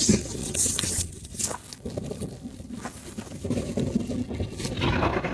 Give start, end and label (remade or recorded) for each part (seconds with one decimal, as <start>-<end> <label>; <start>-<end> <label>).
0.0-0.4 recorded; 0.4-1.3 remade; 1.3-5.3 recorded